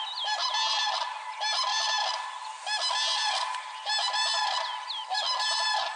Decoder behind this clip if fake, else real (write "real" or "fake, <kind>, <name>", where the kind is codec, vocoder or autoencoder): real